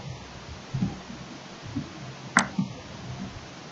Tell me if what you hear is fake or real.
real